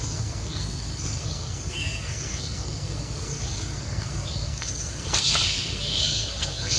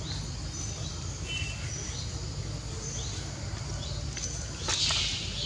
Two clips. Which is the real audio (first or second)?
second